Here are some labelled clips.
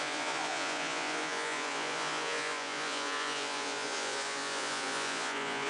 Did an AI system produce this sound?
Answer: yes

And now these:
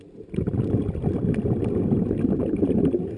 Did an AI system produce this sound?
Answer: no